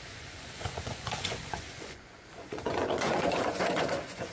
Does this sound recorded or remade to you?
remade